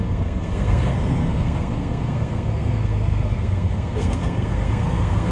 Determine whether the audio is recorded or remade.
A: remade